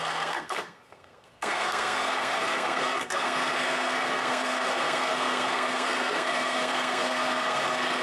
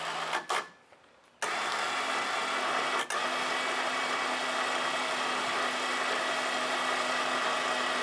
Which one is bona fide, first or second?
second